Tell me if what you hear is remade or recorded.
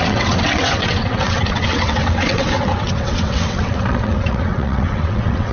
remade